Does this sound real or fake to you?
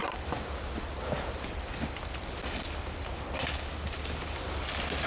real